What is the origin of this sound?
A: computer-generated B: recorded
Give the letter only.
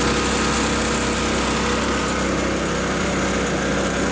B